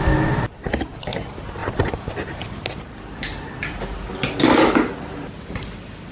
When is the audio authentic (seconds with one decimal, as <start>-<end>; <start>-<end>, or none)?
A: 0.0-6.1